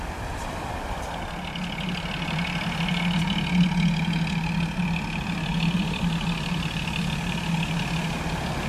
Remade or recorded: recorded